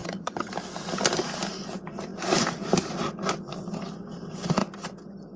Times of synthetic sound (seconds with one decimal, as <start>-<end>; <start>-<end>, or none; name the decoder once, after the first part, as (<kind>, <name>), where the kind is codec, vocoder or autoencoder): 0.0-0.5 (vocoder, HiFi-GAN)